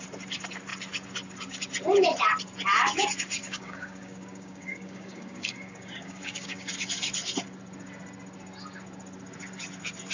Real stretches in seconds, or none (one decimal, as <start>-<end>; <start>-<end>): 0.0-3.4; 6.7-10.1